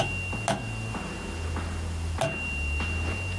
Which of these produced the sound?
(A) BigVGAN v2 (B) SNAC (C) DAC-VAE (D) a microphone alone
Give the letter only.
D